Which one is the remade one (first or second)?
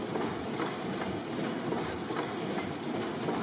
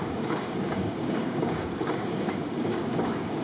second